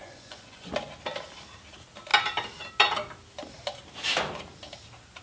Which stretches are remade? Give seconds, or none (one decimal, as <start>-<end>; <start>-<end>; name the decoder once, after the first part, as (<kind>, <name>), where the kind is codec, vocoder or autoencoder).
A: 0.0-0.7 (vocoder, Vocos)